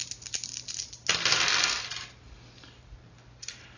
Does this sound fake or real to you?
real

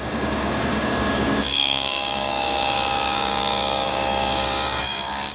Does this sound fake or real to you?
fake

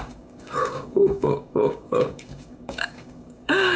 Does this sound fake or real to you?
fake